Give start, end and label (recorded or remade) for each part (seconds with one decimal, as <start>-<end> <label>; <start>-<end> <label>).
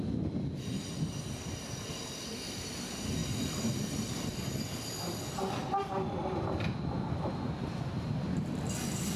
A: 0.0-9.2 recorded